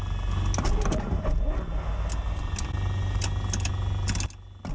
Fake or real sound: real